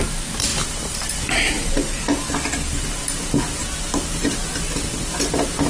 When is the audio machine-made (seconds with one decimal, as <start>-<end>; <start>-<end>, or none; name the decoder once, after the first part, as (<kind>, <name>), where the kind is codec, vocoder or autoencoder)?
none